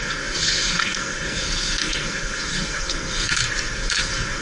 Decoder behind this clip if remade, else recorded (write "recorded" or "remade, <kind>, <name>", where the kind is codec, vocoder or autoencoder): remade, codec, SNAC